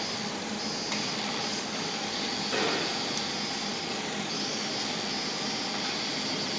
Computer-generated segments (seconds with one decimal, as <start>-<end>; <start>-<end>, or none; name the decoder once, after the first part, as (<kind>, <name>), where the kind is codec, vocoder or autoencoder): 1.5-2.3 (codec, DAC); 3.7-4.7